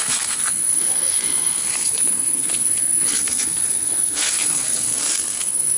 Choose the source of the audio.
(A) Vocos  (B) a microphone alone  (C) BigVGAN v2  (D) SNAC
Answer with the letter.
D